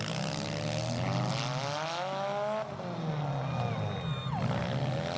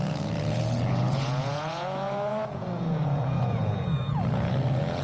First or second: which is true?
first